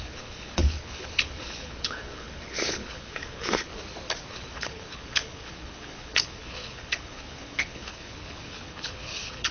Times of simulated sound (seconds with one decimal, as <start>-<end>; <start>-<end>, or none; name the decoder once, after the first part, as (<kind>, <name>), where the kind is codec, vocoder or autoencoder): 0.0-3.7 (codec, HILCodec); 4.3-9.5